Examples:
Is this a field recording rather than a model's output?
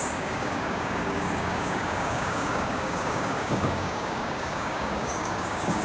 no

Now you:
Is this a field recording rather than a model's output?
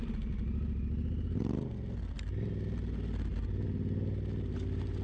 yes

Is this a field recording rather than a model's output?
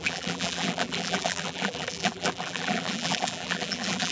no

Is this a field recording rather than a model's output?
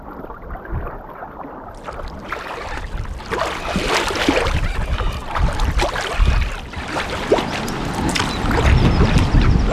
yes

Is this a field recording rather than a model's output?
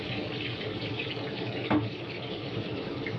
no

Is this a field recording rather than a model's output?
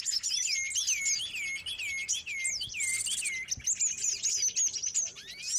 yes